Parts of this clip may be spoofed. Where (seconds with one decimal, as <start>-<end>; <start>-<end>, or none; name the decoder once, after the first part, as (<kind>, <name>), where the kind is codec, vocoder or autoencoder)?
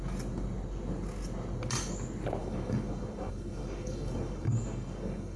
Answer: 2.4-5.4 (codec, DAC)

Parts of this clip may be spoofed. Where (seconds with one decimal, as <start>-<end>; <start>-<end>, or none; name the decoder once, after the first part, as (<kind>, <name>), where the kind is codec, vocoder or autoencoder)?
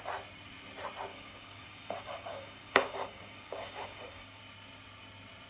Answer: 1.1-4.4 (codec, DAC)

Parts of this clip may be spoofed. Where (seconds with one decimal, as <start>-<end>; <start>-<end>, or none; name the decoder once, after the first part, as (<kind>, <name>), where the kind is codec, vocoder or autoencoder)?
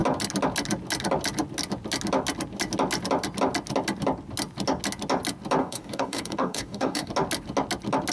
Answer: 5.6-7.1 (codec, DAC)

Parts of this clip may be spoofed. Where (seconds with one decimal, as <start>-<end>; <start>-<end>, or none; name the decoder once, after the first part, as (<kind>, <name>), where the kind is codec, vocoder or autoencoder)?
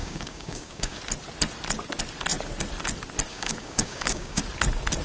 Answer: 0.0-1.0 (codec, DAC); 3.3-4.4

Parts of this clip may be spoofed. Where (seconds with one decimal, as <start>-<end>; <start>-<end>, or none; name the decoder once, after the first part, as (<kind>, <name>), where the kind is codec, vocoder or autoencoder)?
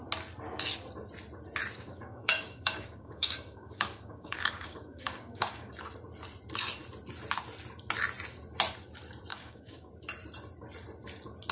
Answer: 1.9-5.7 (codec, DAC); 9.3-9.9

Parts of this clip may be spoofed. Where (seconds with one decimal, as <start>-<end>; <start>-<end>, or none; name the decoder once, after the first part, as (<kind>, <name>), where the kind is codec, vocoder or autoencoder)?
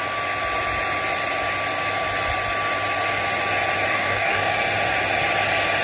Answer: 3.9-4.5 (codec, DAC)